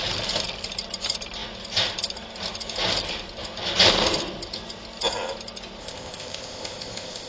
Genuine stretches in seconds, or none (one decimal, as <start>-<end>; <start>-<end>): 0.0-5.8